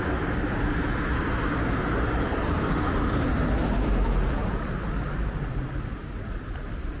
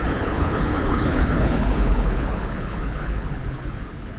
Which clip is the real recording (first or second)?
first